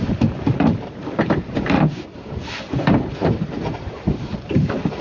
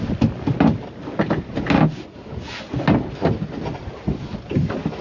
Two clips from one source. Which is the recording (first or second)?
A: second